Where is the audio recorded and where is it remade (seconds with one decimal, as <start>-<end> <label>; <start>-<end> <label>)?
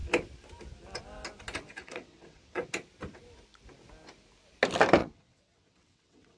0.0-1.8 recorded; 1.8-2.7 remade; 2.7-5.0 recorded; 5.0-6.4 remade